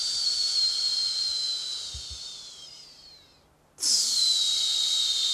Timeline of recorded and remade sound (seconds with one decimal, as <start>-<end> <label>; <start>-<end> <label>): 0.0-5.3 recorded